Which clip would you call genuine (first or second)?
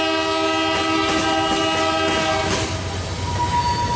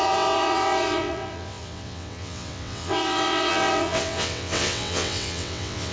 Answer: first